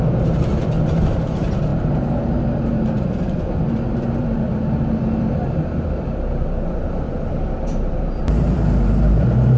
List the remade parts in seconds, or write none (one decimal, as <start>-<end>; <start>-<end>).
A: 0.0-9.6